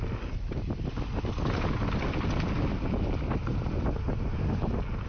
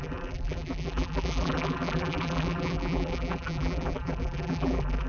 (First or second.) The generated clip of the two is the second